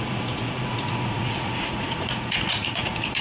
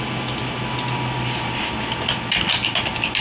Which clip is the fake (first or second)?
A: first